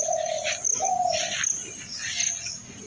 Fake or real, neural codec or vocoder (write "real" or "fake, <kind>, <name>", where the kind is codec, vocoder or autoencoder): real